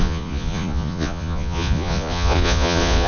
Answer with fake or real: fake